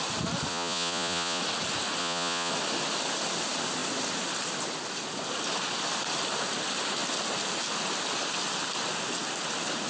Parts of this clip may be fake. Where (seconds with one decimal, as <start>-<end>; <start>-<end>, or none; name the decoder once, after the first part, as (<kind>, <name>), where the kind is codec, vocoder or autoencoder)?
0.5-1.4 (vocoder, Vocos); 2.0-2.5